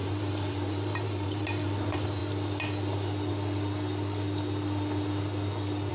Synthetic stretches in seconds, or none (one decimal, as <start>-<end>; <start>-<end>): 0.0-1.8